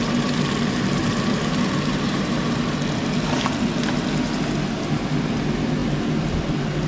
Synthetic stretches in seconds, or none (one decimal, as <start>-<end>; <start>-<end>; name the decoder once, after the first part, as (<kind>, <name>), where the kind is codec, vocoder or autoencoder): 1.0-2.7 (vocoder, BigVGAN v2)

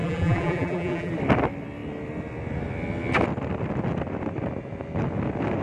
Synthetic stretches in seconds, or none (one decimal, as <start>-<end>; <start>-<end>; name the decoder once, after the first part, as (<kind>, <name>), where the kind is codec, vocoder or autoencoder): 0.0-1.1 (vocoder, BigVGAN v2)

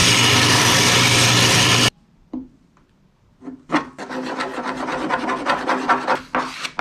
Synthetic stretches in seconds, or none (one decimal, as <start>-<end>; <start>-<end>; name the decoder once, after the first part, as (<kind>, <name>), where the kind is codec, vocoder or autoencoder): none

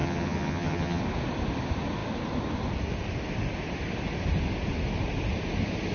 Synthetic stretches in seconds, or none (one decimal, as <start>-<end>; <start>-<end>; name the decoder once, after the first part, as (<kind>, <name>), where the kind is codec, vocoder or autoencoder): 0.0-1.0 (vocoder, HiFi-GAN)

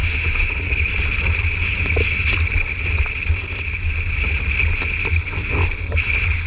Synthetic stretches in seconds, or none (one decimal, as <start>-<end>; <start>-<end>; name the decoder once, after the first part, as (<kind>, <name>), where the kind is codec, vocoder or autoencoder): 0.0-0.5 (autoencoder, DAC-VAE)

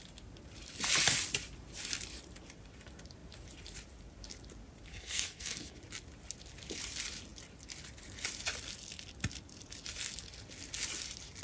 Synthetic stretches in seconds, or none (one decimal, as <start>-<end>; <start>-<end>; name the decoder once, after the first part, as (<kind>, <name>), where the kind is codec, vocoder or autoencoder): 4.9-5.8 (codec, SNAC)

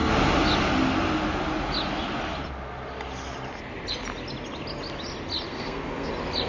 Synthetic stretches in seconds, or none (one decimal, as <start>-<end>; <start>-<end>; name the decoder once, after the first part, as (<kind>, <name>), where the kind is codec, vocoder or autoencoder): 5.5-6.1 (codec, SNAC)